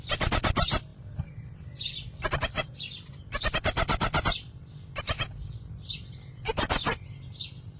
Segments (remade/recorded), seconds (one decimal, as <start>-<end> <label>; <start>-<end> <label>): 0.0-7.8 recorded